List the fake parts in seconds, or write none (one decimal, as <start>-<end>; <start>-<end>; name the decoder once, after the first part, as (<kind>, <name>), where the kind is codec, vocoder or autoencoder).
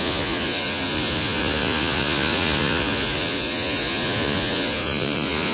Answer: 0.0-5.5 (vocoder, Vocos)